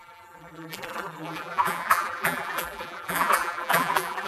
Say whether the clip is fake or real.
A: fake